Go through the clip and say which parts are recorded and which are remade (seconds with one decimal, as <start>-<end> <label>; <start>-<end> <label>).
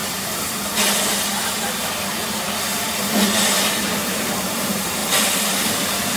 0.0-3.7 recorded; 3.7-6.2 remade